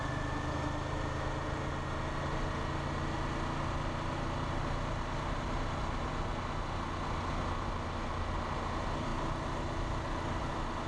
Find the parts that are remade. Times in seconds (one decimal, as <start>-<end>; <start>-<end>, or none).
none